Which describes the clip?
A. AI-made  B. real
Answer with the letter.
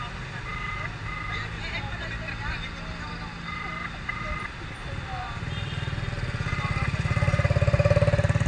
B